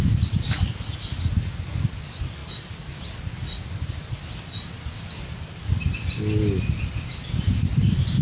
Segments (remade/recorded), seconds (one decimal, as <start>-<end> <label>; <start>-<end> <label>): 0.0-8.2 recorded